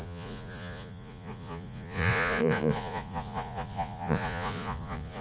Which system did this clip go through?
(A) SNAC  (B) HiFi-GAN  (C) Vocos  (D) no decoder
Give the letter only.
C